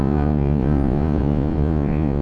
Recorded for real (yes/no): no